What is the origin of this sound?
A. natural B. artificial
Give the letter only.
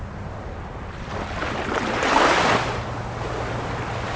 A